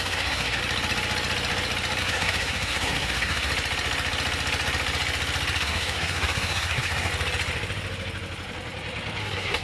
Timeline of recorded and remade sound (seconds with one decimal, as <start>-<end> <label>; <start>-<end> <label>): 0.0-0.6 remade; 0.6-2.0 recorded; 2.0-3.5 remade; 3.5-5.6 recorded; 5.6-7.1 remade; 7.1-9.2 recorded; 9.2-9.6 remade